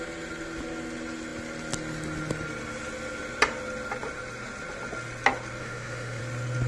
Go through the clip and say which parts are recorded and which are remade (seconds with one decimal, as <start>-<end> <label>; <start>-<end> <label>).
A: 0.0-5.6 recorded; 5.6-6.2 remade; 6.2-6.7 recorded